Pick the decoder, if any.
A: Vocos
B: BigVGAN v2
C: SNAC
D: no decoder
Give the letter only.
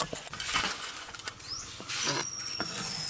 A